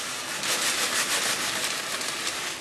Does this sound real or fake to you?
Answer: real